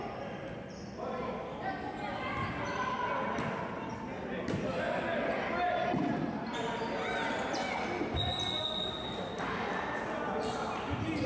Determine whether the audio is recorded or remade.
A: recorded